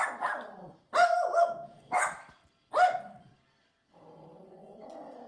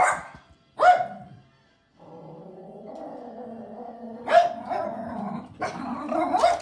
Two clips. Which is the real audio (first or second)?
second